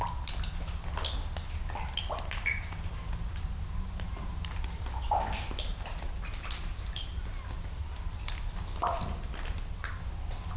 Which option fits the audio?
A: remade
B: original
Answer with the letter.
B